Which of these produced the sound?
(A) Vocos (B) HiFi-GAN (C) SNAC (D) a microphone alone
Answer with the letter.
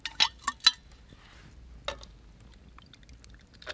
D